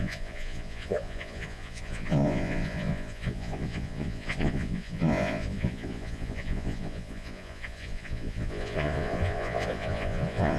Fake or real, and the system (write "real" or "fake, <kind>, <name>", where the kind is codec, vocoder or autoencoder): fake, vocoder, Vocos